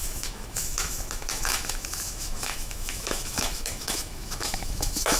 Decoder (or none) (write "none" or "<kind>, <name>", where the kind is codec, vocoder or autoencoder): autoencoder, DAC-VAE